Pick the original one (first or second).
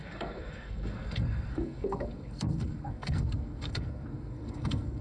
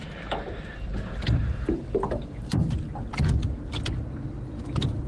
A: second